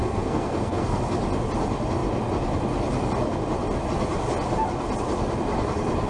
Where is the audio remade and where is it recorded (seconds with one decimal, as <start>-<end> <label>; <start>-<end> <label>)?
0.0-1.0 remade; 1.0-6.1 recorded

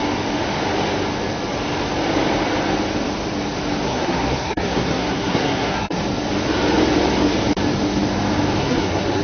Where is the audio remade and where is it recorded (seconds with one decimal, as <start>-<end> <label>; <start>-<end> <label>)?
0.0-3.9 recorded; 3.9-6.0 remade; 6.0-8.6 recorded; 8.6-9.2 remade

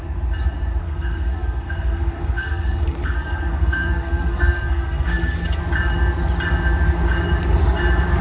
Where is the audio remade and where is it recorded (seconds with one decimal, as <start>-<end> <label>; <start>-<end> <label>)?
0.0-0.8 recorded; 0.8-5.6 remade; 5.6-8.2 recorded

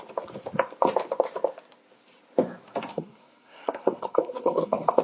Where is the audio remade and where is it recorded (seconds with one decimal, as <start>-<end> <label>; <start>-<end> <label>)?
0.0-2.9 recorded; 2.9-5.0 remade

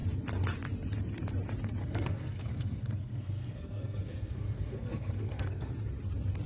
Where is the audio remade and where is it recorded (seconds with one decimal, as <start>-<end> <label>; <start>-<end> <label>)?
0.0-1.8 recorded; 1.8-5.7 remade; 5.7-6.5 recorded

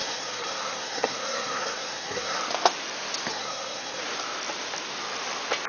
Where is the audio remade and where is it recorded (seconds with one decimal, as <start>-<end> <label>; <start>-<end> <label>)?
0.0-2.4 remade; 2.4-3.3 recorded; 3.3-4.0 remade; 4.0-5.7 recorded

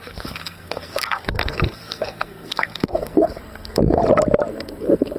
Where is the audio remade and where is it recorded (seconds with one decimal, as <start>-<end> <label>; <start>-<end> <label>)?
0.0-4.0 remade; 4.0-4.5 recorded; 4.5-5.2 remade

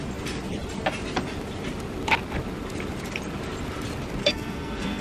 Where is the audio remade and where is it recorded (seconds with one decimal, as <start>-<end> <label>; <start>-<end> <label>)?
0.0-4.2 recorded; 4.2-5.0 remade